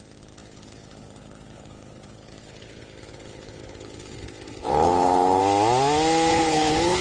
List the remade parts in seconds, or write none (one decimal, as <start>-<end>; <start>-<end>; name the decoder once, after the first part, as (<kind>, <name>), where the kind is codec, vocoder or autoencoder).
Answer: 0.0-5.4 (codec, HILCodec); 6.3-7.0